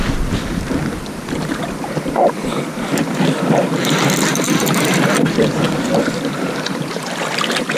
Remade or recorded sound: remade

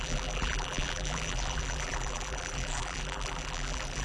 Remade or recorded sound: remade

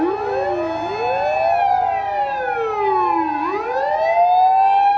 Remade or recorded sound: recorded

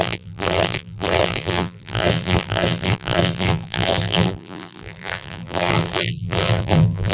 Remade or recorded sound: remade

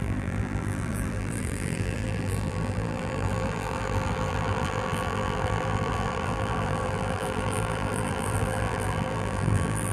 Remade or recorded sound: remade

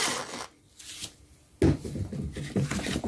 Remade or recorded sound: recorded